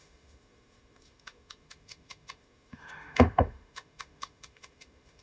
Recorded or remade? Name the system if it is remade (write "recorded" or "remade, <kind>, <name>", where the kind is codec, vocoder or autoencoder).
remade, autoencoder, DAC-VAE